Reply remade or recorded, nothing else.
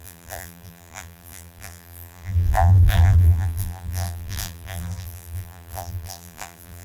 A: remade